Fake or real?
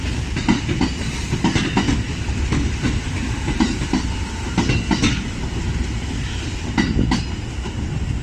real